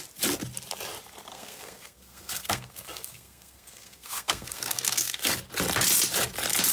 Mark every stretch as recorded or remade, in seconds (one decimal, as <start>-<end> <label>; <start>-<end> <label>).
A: 0.0-1.3 recorded; 1.3-5.3 remade; 5.3-6.7 recorded